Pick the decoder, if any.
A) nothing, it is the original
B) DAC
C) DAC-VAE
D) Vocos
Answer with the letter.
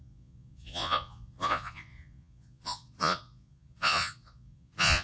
D